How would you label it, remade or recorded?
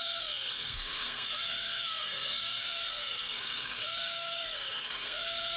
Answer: remade